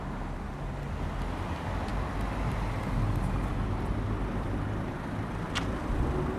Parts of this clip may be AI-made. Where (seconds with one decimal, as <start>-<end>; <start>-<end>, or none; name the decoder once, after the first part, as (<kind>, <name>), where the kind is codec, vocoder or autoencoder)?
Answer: none